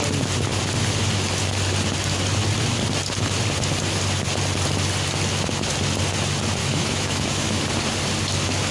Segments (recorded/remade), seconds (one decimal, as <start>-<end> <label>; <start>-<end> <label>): 0.0-6.6 recorded; 6.6-7.6 remade; 7.6-8.7 recorded